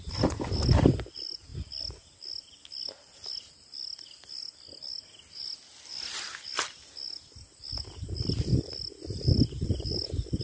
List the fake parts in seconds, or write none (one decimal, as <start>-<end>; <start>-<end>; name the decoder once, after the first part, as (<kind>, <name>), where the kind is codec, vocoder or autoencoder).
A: none